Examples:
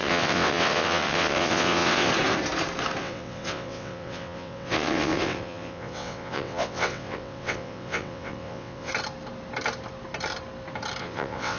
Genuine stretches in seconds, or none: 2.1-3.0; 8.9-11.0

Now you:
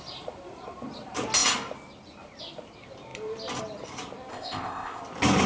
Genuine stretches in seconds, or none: 0.0-4.3; 5.0-5.5